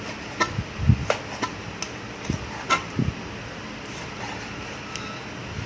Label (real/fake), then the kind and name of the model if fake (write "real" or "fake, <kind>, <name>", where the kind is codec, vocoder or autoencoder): real